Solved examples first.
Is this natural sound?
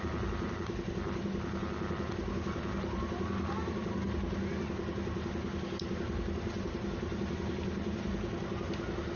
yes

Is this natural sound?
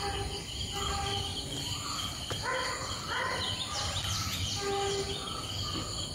yes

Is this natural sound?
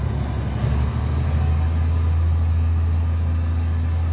yes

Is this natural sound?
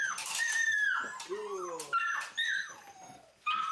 yes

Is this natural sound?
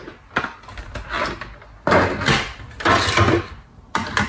yes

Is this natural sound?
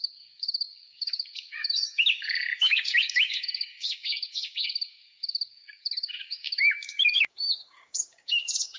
no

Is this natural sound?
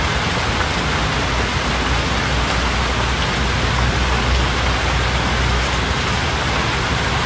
yes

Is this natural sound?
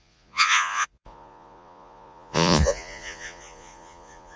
no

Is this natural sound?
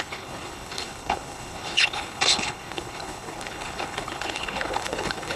no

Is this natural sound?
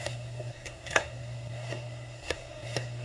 no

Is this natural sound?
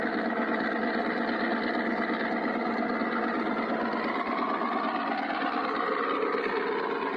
yes